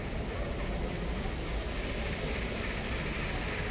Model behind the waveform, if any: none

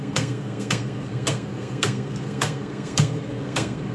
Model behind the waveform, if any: codec, SNAC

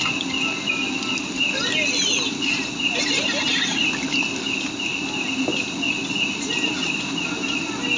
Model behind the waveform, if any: none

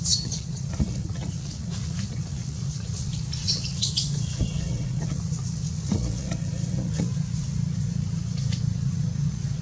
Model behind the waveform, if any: vocoder, Vocos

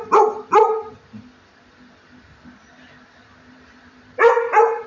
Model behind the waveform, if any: vocoder, BigVGAN v2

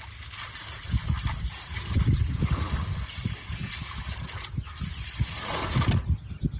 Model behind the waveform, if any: none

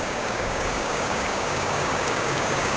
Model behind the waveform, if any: codec, DAC